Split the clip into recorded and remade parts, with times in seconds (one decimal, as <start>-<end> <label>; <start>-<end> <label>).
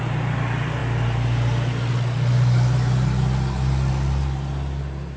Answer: 0.0-5.2 recorded